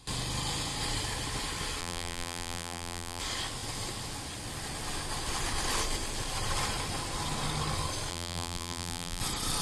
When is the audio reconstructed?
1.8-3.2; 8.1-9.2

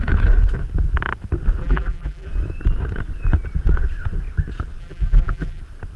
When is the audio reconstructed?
1.6-2.3; 4.8-5.6

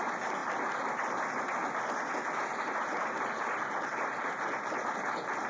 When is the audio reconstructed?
none

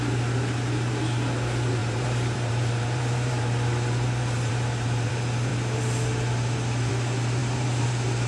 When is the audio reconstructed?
1.8-5.1; 7.4-8.3

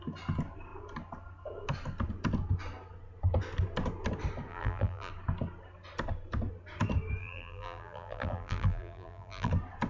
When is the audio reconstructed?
4.5-5.1; 7.2-9.5

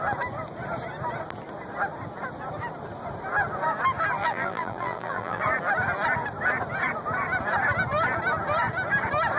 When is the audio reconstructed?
4.2-5.4

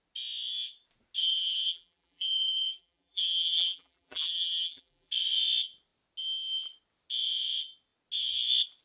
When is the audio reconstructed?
1.2-5.1